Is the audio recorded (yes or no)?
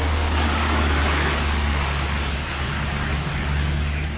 no